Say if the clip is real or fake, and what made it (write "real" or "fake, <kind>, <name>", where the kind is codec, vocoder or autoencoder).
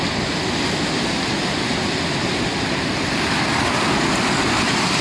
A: real